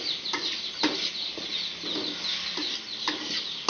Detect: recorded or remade recorded